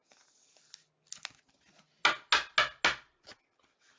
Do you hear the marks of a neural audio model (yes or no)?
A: no